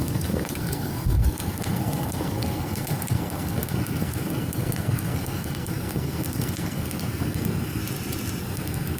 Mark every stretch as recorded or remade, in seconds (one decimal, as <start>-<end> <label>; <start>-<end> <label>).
0.0-7.8 remade; 7.8-8.4 recorded; 8.4-9.0 remade